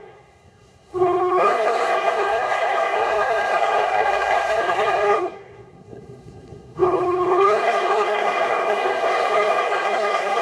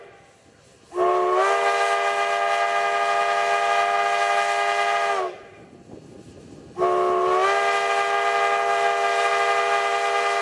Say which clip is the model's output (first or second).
first